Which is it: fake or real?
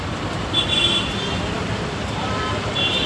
fake